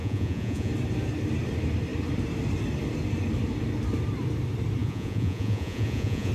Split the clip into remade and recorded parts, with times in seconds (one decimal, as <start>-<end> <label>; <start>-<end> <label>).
0.0-0.7 remade; 0.7-4.8 recorded; 4.8-6.3 remade